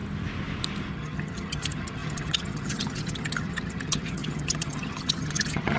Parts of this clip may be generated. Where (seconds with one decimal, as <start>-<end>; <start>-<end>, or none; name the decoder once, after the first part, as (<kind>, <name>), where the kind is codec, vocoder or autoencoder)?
0.9-5.8 (vocoder, HiFi-GAN)